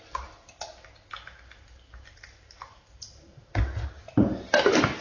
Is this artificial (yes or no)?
no